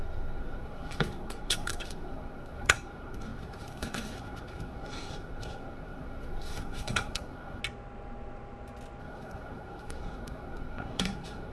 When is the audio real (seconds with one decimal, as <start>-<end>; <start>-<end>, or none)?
7.6-9.0